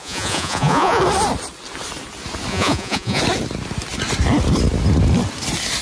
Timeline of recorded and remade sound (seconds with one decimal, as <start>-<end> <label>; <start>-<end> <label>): 0.0-1.0 remade; 1.0-2.5 recorded; 2.5-3.2 remade; 3.2-5.8 recorded